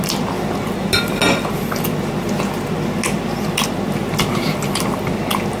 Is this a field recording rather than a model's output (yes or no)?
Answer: yes